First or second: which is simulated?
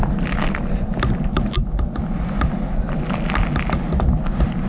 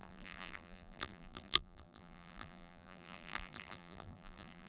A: second